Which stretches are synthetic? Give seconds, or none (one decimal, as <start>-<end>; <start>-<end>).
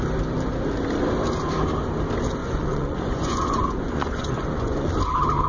2.4-4.9